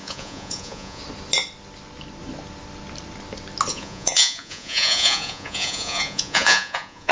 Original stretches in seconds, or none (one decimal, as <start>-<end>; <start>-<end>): 1.0-3.7